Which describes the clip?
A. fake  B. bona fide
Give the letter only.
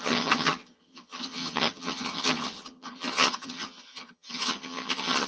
A